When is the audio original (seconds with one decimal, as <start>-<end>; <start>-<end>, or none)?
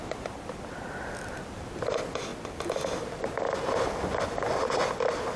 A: 0.0-5.4